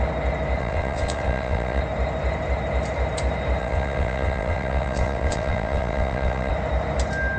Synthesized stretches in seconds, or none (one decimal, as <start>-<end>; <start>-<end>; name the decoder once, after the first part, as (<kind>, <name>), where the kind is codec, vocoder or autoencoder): 0.6-1.8 (vocoder, WaveNeXt); 3.6-6.5